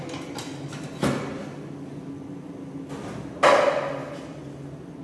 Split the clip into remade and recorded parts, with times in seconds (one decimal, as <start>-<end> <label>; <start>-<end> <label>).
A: 0.0-1.4 recorded; 1.4-3.0 remade; 3.0-5.0 recorded